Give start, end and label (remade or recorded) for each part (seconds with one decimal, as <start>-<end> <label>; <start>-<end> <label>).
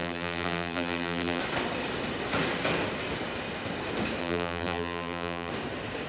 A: 0.0-1.4 remade; 1.4-4.2 recorded; 4.2-5.5 remade; 5.5-6.1 recorded